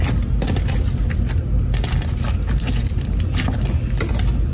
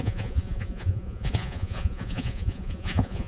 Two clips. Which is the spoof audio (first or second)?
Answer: second